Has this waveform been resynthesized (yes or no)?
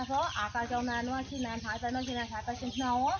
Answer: no